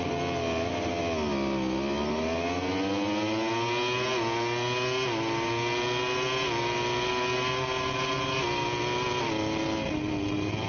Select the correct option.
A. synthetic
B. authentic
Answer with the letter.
B